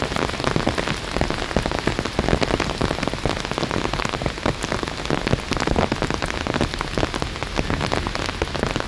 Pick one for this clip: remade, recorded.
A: recorded